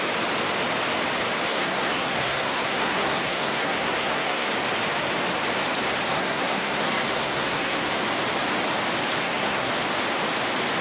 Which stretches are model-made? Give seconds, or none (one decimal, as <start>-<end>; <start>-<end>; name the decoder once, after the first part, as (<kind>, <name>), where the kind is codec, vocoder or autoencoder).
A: 1.5-4.5 (codec, SNAC); 6.1-7.9; 9.2-9.7